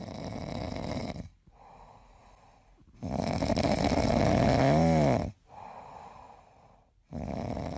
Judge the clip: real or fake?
real